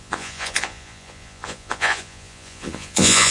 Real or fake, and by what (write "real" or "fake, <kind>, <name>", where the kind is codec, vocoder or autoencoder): fake, vocoder, Vocos